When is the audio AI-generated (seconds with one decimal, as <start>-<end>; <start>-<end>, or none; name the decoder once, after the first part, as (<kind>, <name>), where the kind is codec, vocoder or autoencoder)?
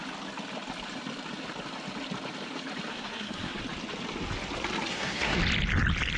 2.9-3.6 (codec, SNAC); 4.9-5.4